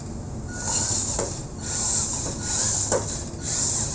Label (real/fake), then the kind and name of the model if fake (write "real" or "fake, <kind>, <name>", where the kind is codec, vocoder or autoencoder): real